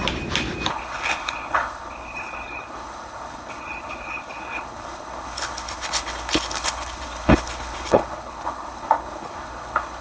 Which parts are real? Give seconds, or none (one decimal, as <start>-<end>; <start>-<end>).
0.0-0.7